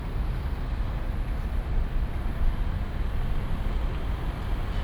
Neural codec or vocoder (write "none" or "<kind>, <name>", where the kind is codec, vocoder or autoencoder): none